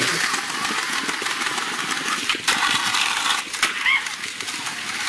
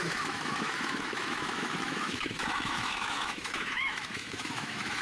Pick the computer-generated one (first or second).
second